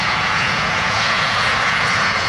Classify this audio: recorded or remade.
remade